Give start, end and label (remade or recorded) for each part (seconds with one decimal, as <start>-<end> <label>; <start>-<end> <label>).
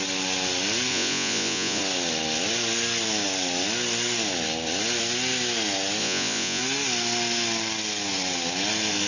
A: 0.0-0.9 recorded; 0.9-1.8 remade; 1.8-6.0 recorded; 6.0-6.6 remade; 6.6-9.1 recorded